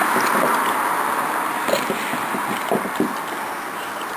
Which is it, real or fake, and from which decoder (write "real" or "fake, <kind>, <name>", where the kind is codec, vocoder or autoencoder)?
real